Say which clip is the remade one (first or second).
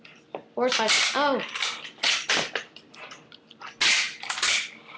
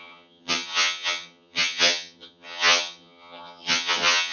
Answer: second